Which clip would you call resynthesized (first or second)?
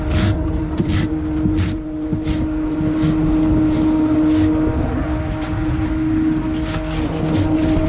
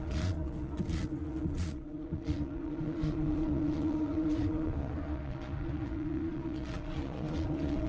second